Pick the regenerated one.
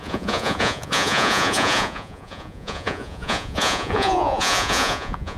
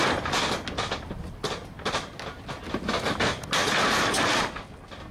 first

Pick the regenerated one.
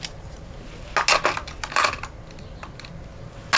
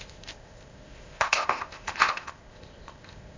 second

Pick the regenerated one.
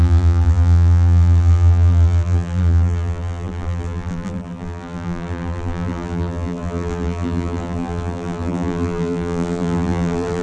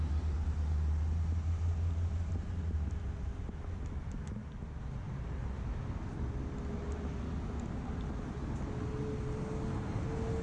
first